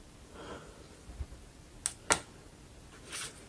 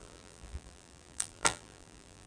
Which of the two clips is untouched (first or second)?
first